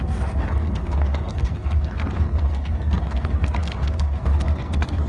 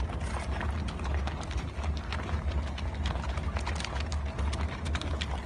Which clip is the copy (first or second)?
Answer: first